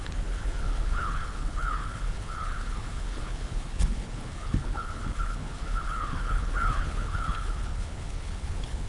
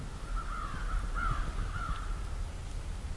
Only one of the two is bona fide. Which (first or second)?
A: second